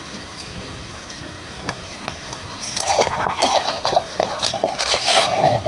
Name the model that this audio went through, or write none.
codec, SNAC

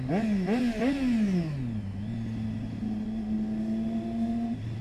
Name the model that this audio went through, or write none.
none